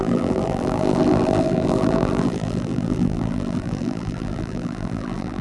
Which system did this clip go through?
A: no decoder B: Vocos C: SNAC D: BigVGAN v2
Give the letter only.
D